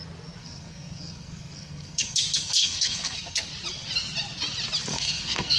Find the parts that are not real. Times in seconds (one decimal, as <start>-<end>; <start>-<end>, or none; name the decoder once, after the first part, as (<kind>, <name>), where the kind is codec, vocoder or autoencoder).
0.4-3.5 (codec, SNAC); 4.9-5.6